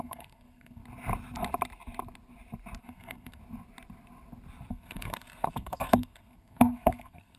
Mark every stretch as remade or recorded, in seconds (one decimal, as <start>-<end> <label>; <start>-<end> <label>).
0.0-0.8 remade; 0.8-2.8 recorded; 2.8-3.4 remade; 3.4-4.7 recorded; 4.7-7.4 remade